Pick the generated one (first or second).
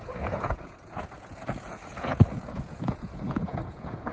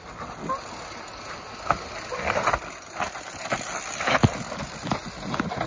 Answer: first